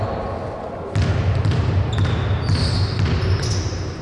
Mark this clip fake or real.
real